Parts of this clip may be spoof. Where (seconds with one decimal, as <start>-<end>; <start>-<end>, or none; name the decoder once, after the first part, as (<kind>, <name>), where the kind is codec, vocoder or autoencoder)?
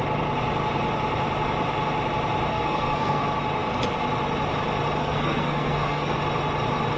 2.5-3.2 (codec, SNAC); 5.0-6.2